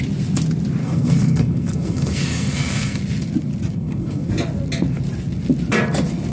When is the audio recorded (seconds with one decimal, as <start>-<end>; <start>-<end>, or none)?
0.0-0.8; 3.0-3.7; 4.3-6.3